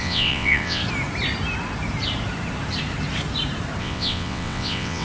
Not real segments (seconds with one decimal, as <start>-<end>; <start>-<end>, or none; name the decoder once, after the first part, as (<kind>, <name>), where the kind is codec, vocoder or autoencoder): 0.0-0.8 (vocoder, WaveNeXt); 3.8-5.0